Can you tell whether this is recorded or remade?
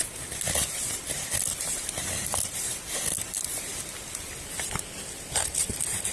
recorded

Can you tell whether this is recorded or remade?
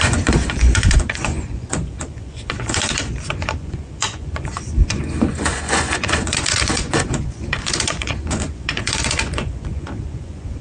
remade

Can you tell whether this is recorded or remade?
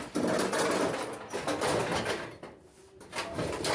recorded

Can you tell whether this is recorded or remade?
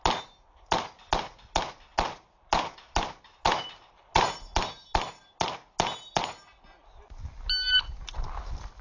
recorded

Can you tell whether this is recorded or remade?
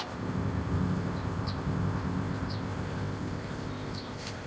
remade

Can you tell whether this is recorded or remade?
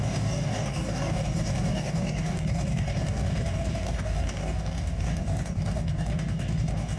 remade